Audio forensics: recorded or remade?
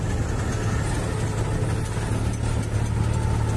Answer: recorded